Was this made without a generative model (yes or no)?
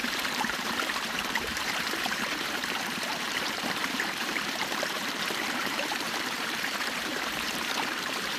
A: no